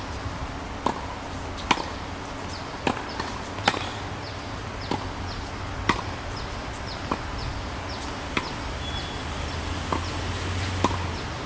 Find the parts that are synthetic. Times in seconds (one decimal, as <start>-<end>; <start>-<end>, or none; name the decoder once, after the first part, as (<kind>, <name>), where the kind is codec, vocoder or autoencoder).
none

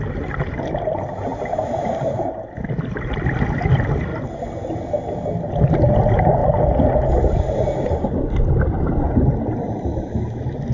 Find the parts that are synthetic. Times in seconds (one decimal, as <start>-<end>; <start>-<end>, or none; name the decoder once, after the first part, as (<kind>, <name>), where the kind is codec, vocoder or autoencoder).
none

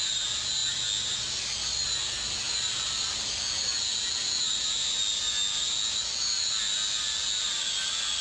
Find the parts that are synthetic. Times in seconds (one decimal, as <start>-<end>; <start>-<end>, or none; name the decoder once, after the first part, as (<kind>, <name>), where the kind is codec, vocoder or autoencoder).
none

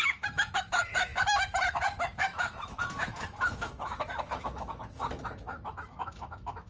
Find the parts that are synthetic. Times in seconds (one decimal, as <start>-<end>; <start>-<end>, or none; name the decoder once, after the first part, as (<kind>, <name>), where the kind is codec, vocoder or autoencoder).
0.0-6.7 (autoencoder, DAC-VAE)

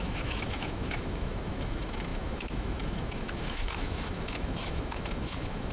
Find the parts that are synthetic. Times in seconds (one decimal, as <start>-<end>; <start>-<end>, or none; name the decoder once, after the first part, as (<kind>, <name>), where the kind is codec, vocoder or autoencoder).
0.0-5.7 (autoencoder, DAC-VAE)